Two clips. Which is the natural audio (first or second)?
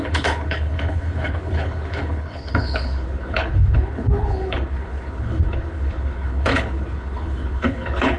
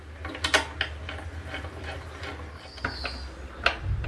second